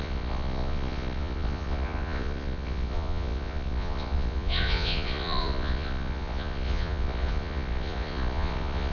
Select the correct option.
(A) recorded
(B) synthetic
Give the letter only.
B